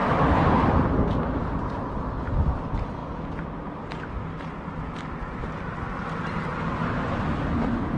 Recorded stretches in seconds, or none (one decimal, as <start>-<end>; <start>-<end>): 0.0-8.0